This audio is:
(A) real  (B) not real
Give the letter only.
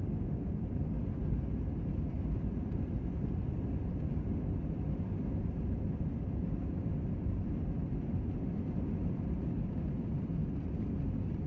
B